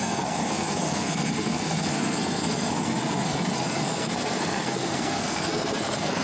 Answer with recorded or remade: remade